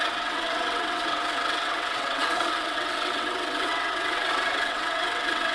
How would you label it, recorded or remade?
remade